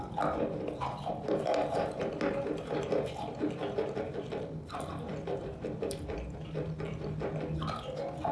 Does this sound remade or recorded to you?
recorded